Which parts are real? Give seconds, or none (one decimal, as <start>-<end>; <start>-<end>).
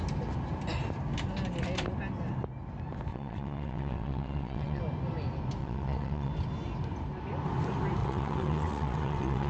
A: 0.0-3.1; 4.8-5.6; 6.3-8.0